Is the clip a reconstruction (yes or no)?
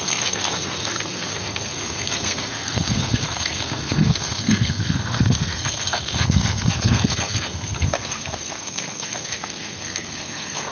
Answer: yes